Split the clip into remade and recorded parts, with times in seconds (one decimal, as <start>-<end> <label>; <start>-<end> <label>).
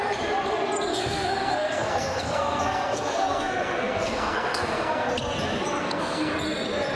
0.0-0.9 recorded; 0.9-5.1 remade; 5.1-5.8 recorded; 5.8-6.3 remade; 6.3-7.0 recorded